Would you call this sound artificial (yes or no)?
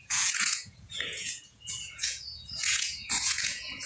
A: yes